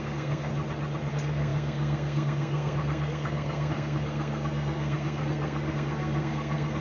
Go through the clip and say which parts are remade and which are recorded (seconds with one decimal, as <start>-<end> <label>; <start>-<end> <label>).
0.0-0.5 remade; 0.5-1.1 recorded; 1.1-6.8 remade